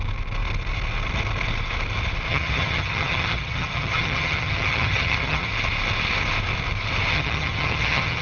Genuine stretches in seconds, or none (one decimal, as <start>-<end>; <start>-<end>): 0.0-2.3; 5.5-7.1